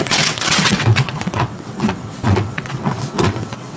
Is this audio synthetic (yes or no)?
yes